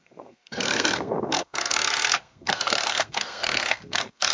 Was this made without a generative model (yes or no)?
no